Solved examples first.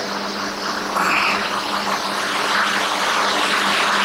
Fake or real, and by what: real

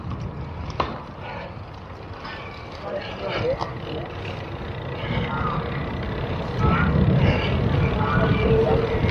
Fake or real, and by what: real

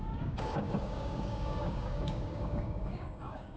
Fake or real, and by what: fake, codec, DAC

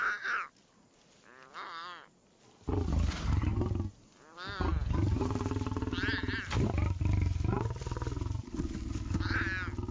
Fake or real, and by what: real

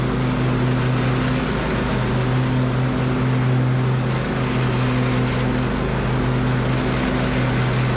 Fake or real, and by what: real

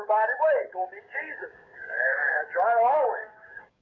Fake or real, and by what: fake, codec, DAC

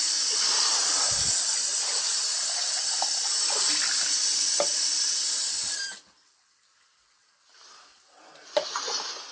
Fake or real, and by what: real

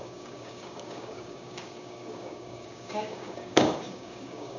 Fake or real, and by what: fake, codec, DAC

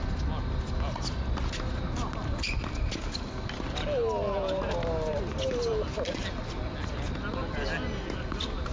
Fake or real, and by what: real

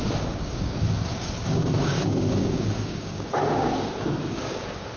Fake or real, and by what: fake, codec, DAC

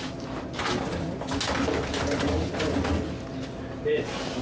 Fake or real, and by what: real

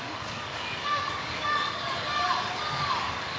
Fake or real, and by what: fake, codec, DAC